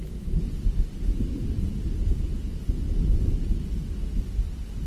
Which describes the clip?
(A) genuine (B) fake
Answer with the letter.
A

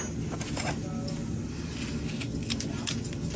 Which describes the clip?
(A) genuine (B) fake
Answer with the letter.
A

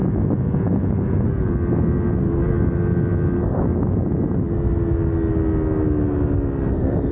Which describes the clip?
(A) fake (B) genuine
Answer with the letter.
B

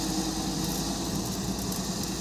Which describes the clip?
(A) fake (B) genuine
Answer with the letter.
B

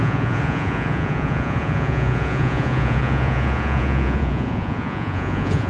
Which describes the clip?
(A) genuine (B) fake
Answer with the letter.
B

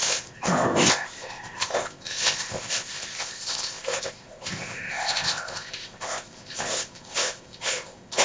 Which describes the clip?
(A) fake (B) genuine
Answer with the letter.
A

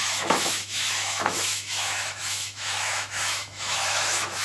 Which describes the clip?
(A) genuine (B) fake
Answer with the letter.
B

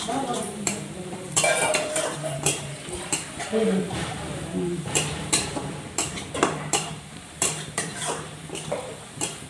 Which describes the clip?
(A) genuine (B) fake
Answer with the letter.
B